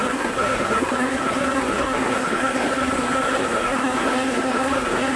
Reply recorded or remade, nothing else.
remade